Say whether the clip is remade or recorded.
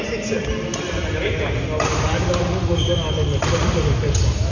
recorded